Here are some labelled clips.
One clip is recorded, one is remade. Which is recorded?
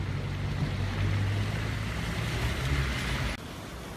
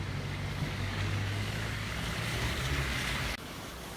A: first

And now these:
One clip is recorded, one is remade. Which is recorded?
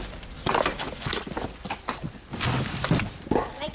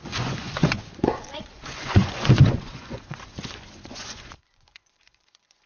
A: first